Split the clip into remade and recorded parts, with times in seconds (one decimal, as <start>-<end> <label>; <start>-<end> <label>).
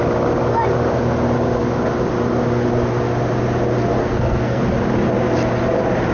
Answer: 0.0-4.0 recorded; 4.0-4.6 remade; 4.6-6.1 recorded